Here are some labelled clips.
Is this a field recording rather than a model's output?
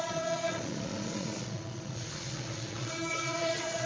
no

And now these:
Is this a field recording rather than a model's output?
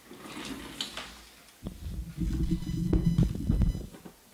yes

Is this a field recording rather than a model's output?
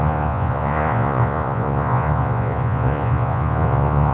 no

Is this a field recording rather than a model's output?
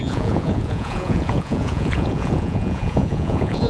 no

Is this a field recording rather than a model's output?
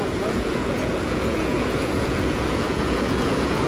no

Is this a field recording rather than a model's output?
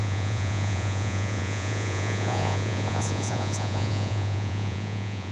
no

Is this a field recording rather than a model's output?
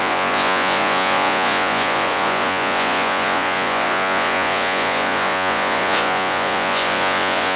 no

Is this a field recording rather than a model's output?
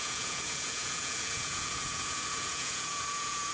no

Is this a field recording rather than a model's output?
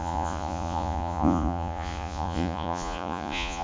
no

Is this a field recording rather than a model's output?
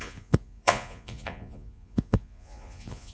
no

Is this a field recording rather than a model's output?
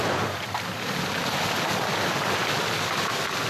yes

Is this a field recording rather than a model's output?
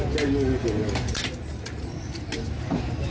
yes